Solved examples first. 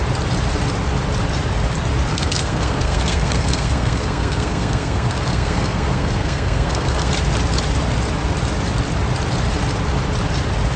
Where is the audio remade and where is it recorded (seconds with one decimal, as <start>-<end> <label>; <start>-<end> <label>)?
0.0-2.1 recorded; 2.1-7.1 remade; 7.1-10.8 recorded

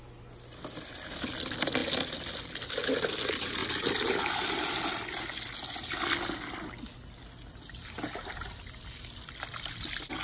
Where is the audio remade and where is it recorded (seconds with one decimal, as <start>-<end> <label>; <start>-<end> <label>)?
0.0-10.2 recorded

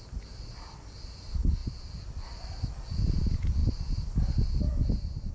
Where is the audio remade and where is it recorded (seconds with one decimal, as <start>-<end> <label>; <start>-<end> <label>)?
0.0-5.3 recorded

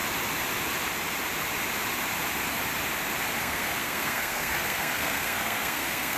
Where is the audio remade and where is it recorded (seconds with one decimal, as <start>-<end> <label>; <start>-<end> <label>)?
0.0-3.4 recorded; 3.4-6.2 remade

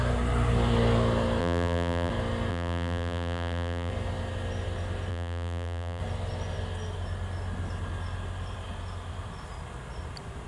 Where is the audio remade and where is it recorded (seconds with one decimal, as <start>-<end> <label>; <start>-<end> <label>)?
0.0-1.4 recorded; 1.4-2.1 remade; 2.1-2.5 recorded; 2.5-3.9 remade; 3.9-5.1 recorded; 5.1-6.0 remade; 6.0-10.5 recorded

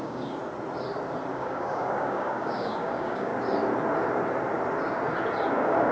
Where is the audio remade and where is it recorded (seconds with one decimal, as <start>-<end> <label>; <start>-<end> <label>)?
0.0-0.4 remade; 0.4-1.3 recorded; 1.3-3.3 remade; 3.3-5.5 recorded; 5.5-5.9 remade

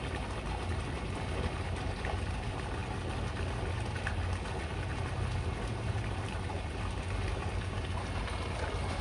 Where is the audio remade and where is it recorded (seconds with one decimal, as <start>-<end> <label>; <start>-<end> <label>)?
0.0-9.0 recorded

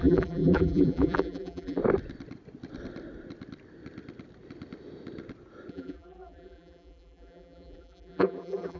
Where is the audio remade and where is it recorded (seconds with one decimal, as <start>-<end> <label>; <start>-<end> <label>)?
0.0-1.8 remade; 1.8-5.7 recorded; 5.7-8.8 remade